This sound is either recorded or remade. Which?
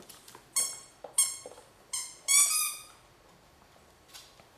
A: recorded